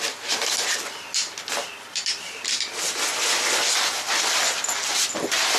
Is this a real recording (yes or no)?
yes